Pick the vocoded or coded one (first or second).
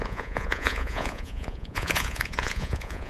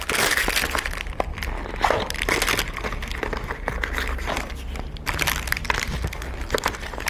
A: first